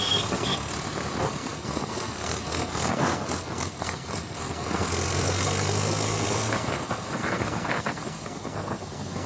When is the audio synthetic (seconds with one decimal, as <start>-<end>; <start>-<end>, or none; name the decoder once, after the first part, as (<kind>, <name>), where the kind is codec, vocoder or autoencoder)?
0.0-0.7 (codec, SNAC); 1.2-9.3